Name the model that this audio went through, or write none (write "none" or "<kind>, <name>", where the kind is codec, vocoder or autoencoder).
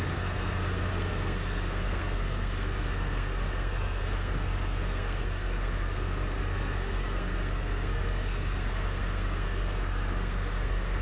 codec, SNAC